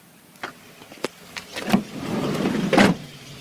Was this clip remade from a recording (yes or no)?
no